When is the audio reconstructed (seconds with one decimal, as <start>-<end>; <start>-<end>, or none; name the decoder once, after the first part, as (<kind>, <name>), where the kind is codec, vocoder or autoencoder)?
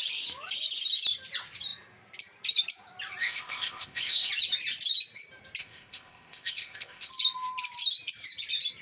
3.2-4.3 (codec, ZipCodec); 5.6-7.1